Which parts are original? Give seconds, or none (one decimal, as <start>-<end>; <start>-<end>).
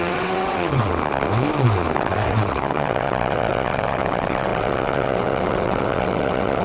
0.9-2.0